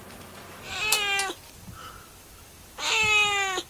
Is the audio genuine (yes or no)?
yes